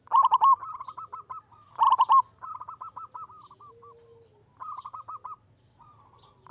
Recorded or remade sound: recorded